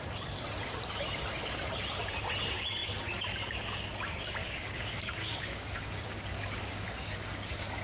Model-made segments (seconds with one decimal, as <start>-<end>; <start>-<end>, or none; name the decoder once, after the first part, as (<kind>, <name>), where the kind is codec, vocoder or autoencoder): 4.4-7.8 (codec, DAC)

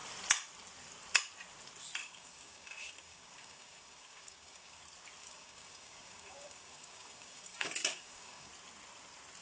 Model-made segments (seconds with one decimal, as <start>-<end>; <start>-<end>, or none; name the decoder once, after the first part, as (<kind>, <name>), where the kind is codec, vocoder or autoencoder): 2.0-4.8 (codec, DAC); 5.2-8.5